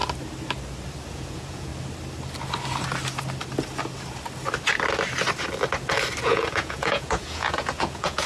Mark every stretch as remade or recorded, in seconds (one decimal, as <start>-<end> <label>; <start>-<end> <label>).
0.0-1.1 recorded; 1.1-1.7 remade; 1.7-6.2 recorded; 6.2-8.3 remade

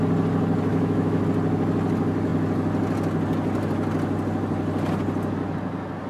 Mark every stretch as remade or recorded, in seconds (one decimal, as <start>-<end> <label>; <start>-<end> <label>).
0.0-0.7 recorded; 0.7-1.2 remade; 1.2-6.1 recorded